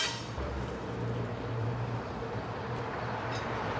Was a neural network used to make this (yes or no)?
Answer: yes